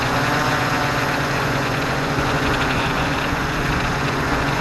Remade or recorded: remade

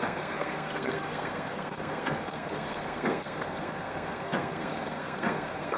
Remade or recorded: remade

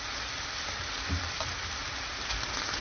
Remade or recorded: recorded